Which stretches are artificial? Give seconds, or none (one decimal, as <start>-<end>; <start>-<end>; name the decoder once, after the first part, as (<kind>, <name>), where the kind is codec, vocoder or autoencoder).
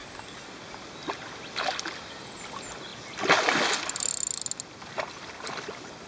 none